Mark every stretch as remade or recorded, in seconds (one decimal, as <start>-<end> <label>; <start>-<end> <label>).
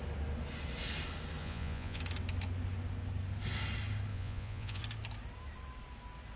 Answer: 0.0-1.4 recorded; 1.4-2.0 remade; 2.0-4.1 recorded; 4.1-4.8 remade; 4.8-6.4 recorded